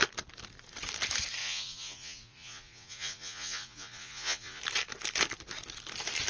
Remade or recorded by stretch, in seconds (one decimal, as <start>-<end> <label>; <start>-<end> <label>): 0.0-1.4 recorded; 1.4-4.6 remade; 4.6-6.3 recorded

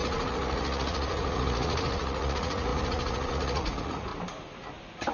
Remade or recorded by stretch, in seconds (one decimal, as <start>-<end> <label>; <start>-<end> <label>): 0.0-4.1 remade; 4.1-5.1 recorded

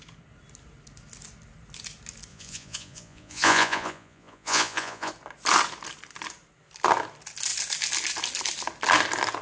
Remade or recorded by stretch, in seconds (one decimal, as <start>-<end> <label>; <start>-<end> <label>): 0.0-2.3 recorded; 2.3-5.1 remade; 5.1-9.4 recorded

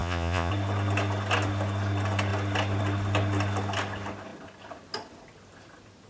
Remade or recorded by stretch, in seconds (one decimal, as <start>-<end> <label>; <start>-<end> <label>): 0.0-0.5 remade; 0.5-6.1 recorded